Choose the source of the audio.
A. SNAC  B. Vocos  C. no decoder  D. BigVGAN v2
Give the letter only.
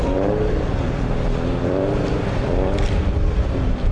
D